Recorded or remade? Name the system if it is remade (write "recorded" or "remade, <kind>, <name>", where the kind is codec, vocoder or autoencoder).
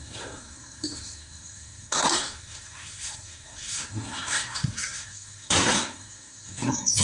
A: remade, codec, SNAC